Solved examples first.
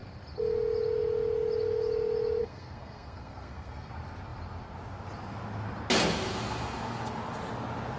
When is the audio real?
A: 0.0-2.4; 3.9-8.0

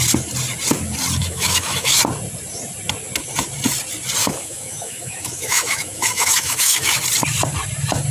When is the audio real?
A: 0.0-1.2; 2.0-4.2; 7.0-8.1

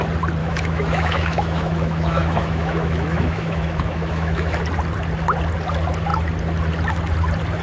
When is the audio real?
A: 0.0-0.4; 4.6-7.6

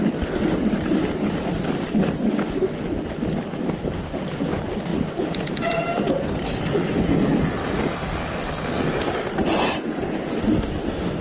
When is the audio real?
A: 0.0-4.9; 6.1-11.2